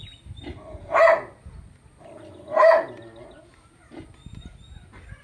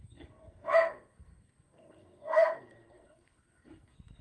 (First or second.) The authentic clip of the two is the first